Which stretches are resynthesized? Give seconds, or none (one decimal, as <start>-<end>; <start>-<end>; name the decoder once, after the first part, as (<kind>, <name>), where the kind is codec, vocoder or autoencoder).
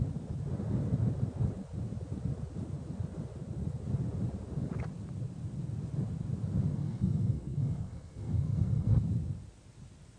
6.7-9.0 (codec, SNAC)